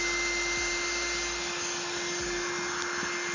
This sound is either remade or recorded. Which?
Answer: recorded